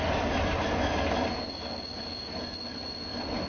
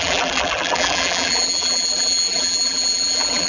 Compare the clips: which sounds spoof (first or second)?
second